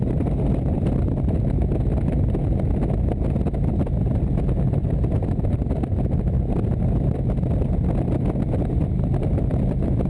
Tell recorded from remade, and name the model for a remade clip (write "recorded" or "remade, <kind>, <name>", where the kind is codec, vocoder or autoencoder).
recorded